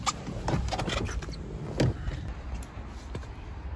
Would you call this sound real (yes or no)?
yes